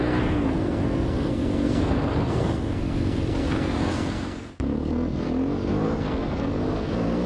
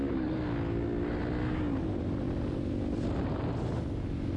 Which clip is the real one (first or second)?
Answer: second